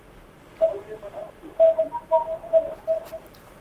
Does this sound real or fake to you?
fake